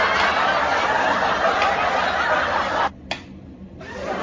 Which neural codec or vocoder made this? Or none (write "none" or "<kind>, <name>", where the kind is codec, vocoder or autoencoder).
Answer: none